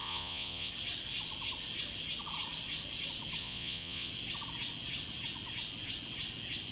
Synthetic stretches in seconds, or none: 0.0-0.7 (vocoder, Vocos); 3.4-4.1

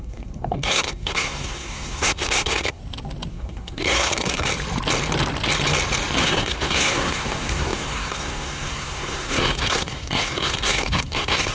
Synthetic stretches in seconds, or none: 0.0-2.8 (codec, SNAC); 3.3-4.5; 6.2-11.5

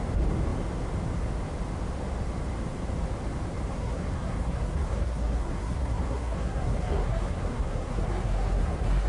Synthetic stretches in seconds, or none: 3.7-9.1 (codec, SNAC)

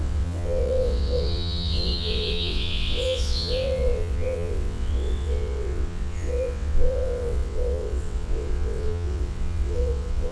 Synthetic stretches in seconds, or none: 0.0-10.3 (vocoder, WaveNeXt)